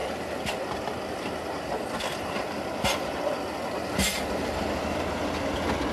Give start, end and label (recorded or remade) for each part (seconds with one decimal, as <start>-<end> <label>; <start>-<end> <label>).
0.0-4.0 recorded; 4.0-5.2 remade; 5.2-5.9 recorded

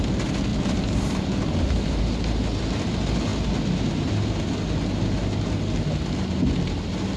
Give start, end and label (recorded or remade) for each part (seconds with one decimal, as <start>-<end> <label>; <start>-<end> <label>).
0.0-0.5 recorded; 0.5-2.0 remade; 2.0-7.2 recorded

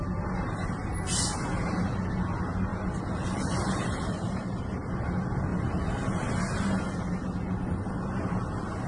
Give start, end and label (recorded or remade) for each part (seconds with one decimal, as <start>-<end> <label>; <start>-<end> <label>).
0.0-2.7 recorded; 2.7-4.6 remade; 4.6-8.9 recorded